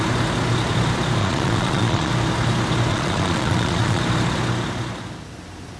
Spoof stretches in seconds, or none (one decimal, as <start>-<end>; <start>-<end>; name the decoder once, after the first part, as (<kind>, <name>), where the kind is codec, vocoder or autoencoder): 1.2-2.1 (vocoder, Vocos); 2.9-4.0